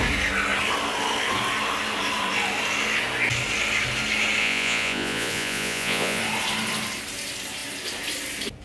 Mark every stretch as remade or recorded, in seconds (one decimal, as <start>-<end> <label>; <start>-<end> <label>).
0.0-4.4 recorded; 4.4-6.2 remade; 6.2-8.6 recorded